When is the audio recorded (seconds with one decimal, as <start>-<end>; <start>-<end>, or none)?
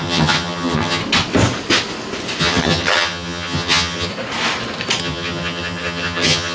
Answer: 1.0-2.4; 4.1-5.0